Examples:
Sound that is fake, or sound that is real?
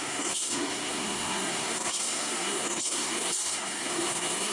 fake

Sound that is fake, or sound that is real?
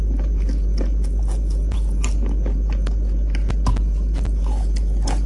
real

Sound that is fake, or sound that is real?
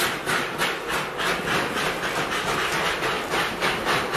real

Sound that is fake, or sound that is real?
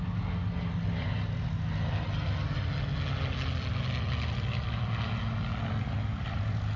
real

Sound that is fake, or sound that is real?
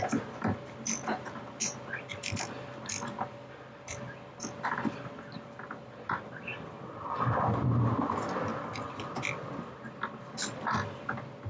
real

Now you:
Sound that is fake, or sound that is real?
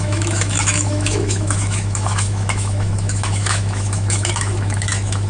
fake